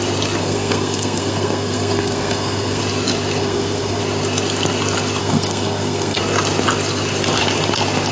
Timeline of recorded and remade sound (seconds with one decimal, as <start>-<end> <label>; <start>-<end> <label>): 0.0-0.4 recorded; 0.4-2.8 remade; 2.8-3.4 recorded; 3.4-4.0 remade; 4.0-5.2 recorded; 5.2-6.2 remade; 6.2-8.1 recorded